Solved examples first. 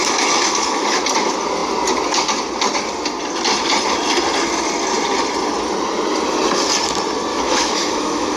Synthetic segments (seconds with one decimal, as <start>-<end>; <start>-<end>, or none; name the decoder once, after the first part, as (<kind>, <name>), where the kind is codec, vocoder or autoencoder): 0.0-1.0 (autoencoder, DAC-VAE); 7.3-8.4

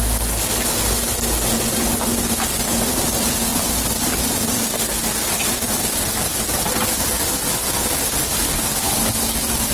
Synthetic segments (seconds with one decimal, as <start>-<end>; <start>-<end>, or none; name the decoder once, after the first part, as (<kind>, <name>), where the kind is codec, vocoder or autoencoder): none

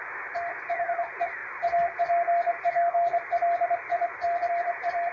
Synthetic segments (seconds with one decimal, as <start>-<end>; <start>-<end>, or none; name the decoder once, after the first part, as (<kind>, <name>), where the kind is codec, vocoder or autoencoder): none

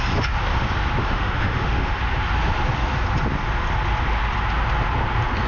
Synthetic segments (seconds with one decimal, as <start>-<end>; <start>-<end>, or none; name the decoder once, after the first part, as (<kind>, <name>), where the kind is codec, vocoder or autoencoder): 1.0-2.0 (autoencoder, DAC-VAE)

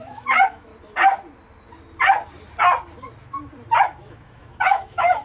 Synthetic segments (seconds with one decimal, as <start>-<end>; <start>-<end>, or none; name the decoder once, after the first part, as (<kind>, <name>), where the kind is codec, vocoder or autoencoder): 0.0-0.7 (autoencoder, DAC-VAE); 3.8-5.2